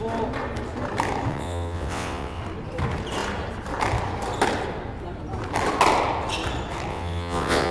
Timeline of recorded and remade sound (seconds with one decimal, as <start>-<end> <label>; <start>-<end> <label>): 0.0-1.3 recorded; 1.3-2.4 remade; 2.4-6.9 recorded; 6.9-7.7 remade